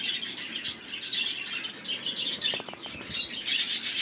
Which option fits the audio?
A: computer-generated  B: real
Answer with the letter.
B